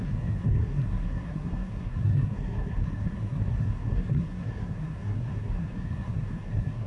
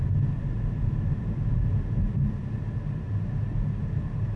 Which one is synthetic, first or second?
first